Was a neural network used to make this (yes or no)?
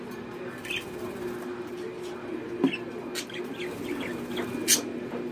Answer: no